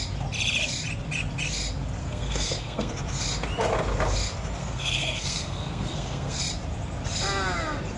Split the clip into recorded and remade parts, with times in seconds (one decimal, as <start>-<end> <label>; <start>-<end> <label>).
0.0-2.0 recorded; 2.0-2.9 remade; 2.9-4.6 recorded; 4.6-6.4 remade; 6.4-8.0 recorded